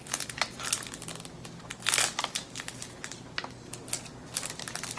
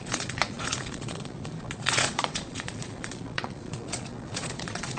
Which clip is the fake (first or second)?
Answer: second